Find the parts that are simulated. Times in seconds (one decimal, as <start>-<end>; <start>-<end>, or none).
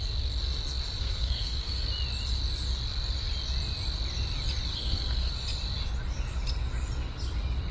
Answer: 1.0-1.9; 4.7-5.3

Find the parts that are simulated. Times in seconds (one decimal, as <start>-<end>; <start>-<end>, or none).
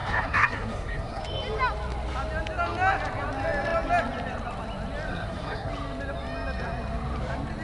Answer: 0.0-1.2; 5.1-5.7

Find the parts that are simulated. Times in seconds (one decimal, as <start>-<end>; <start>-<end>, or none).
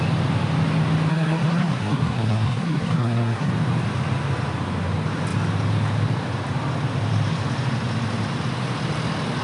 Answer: 1.1-3.5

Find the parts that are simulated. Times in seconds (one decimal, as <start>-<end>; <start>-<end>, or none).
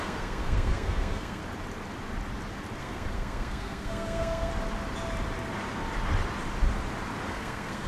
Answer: 0.0-1.4; 2.8-4.5; 7.3-7.9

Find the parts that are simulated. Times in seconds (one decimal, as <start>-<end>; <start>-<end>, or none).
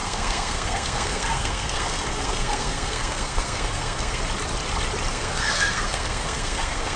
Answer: 0.0-4.2; 5.1-7.0